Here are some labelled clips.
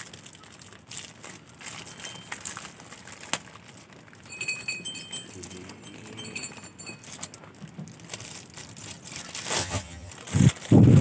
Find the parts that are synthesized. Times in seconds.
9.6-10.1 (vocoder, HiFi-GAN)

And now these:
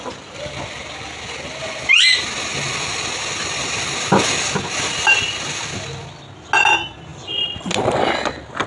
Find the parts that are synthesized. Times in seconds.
none

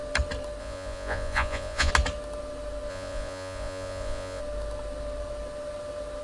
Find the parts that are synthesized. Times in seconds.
0.6-1.9 (vocoder, Vocos); 2.9-4.4

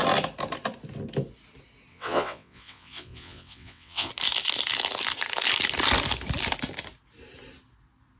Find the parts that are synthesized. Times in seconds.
1.9-4.1 (vocoder, WaveNeXt)

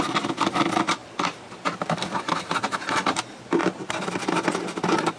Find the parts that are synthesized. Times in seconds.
0.0-5.2 (vocoder, BigVGAN v2)

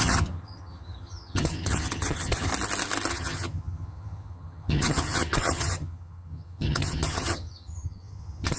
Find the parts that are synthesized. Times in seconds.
0.0-2.5 (vocoder, HiFi-GAN); 3.1-8.6

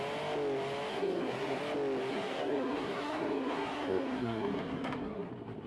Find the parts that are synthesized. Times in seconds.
0.9-1.6 (codec, SNAC); 2.1-5.3

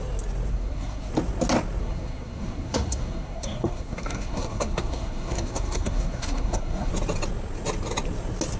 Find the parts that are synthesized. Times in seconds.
0.5-1.1 (codec, SNAC); 1.8-6.9